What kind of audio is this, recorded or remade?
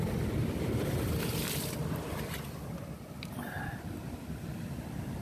recorded